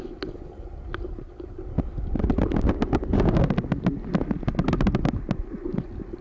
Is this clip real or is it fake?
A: real